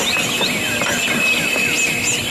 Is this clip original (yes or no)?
yes